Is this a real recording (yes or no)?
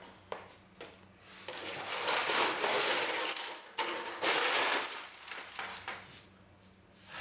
yes